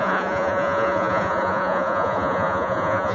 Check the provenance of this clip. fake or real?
fake